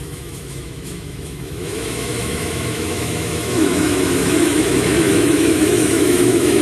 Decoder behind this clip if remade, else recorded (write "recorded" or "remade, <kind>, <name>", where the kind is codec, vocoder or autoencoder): remade, autoencoder, DAC-VAE